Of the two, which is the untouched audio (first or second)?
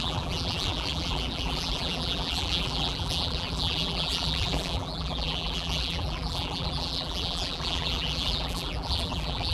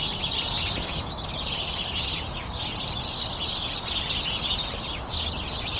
second